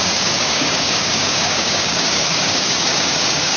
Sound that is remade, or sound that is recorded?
remade